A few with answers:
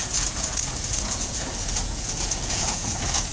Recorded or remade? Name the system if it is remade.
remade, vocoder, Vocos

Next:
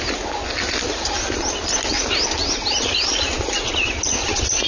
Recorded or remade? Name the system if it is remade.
recorded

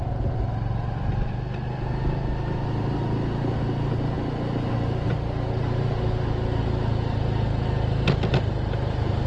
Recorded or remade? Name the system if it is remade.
recorded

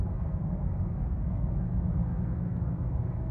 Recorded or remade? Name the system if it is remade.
remade, codec, SNAC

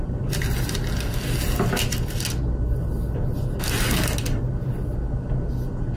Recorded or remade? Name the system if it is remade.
recorded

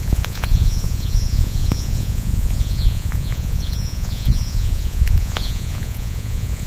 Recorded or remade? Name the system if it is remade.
remade, vocoder, Vocos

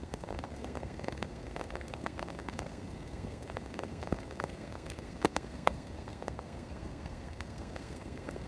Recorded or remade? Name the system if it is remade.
remade, codec, SNAC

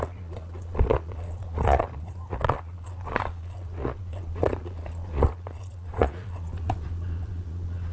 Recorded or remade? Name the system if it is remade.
remade, vocoder, Vocos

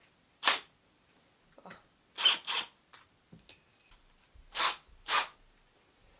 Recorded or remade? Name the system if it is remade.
recorded